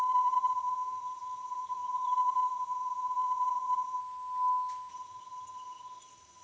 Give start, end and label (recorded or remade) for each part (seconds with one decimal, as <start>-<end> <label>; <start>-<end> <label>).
0.0-4.0 remade; 4.0-4.9 recorded; 4.9-6.4 remade